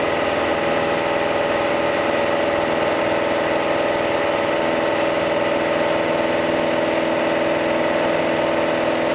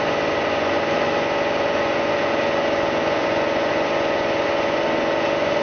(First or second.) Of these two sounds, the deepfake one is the second